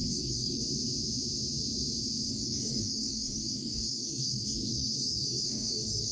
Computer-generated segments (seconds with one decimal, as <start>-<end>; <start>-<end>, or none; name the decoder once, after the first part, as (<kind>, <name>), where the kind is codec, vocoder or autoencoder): 0.0-0.6 (codec, DAC); 2.3-6.1

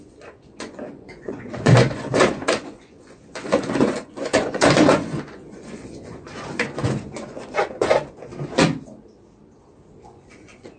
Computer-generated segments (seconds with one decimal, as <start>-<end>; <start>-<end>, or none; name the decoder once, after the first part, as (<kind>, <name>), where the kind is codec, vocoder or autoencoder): 0.0-8.3 (vocoder, Vocos); 10.0-10.8

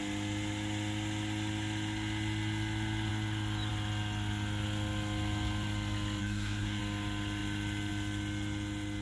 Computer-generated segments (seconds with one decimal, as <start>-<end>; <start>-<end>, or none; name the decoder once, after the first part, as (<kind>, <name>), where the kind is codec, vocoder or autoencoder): 6.2-6.8 (codec, SNAC)

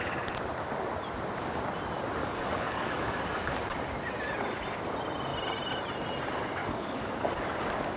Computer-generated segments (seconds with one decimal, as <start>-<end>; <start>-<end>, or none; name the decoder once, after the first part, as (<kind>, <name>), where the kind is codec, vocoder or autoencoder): 2.2-3.2 (codec, DAC); 6.6-8.0